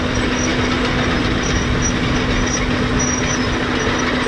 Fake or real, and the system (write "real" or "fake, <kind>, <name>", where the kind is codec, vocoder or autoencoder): real